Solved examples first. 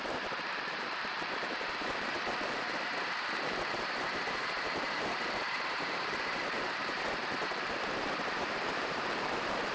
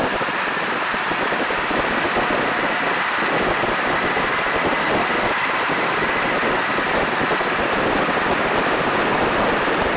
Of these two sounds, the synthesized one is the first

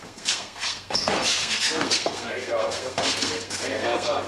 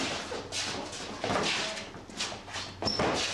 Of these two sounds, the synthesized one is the first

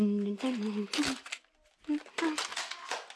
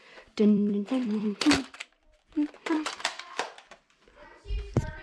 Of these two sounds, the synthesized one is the second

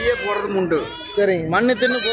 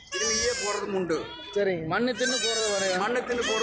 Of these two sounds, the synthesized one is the second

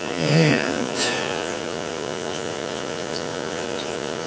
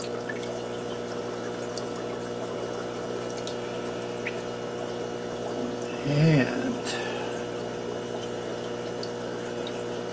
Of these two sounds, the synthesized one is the first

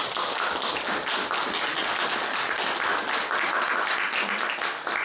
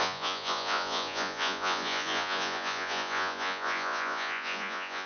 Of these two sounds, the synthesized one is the second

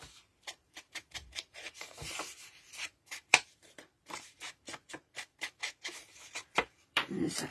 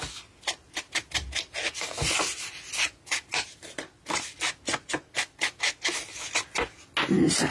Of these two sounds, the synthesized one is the first